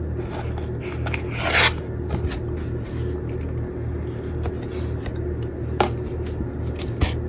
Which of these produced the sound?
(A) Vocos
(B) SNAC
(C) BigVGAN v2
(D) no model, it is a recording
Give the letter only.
D